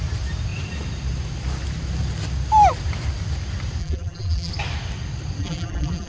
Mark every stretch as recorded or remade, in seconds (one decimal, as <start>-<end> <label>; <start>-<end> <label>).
0.0-3.8 recorded; 3.8-4.5 remade; 4.5-5.4 recorded; 5.4-6.1 remade